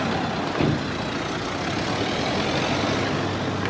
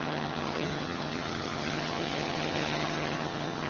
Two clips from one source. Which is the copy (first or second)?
second